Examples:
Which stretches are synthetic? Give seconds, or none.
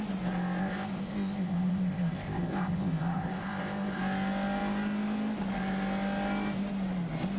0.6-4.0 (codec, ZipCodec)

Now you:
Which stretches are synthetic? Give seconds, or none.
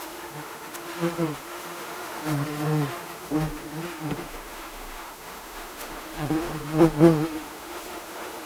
0.0-8.5 (autoencoder, DAC-VAE)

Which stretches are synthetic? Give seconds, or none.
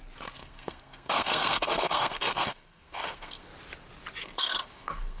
0.4-3.5 (codec, SNAC); 4.2-5.2